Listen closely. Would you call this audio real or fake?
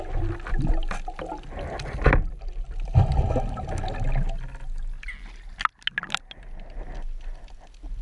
real